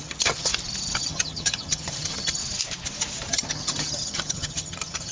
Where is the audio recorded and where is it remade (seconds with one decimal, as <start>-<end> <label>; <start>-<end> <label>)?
0.0-0.5 remade; 0.5-1.0 recorded; 1.0-2.4 remade; 2.4-3.3 recorded; 3.3-5.1 remade